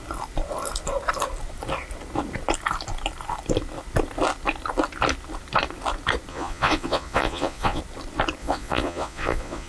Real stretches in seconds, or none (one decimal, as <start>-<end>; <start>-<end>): 0.0-6.3; 7.8-8.4

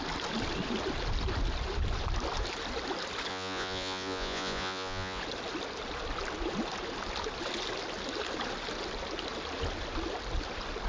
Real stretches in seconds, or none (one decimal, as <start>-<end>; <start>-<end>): 0.0-3.3; 5.2-10.9

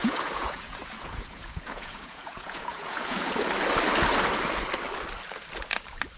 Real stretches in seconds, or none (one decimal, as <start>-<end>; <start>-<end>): 3.3-6.2

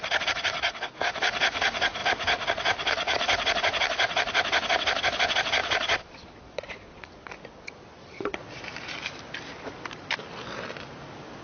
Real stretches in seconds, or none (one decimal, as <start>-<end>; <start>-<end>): 0.0-5.6; 7.3-8.0; 8.6-11.4

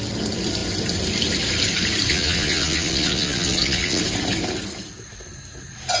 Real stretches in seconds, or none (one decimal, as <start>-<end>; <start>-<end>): 0.0-2.1; 4.0-6.0

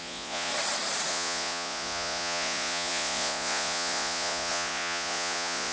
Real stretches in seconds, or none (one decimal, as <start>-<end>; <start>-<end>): 0.5-1.1